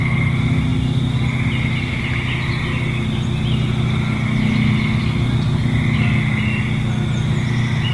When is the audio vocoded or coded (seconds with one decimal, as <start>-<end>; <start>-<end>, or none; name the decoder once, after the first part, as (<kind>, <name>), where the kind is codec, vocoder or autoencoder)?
none